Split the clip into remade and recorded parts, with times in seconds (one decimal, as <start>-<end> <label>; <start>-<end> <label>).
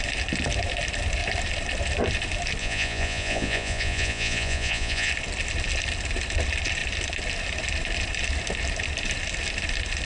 0.0-2.6 recorded; 2.6-5.1 remade; 5.1-10.0 recorded